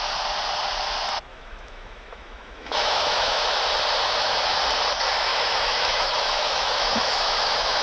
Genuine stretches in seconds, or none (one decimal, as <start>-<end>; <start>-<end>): 0.0-1.3; 3.4-4.0; 4.6-5.3